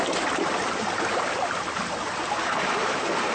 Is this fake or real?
real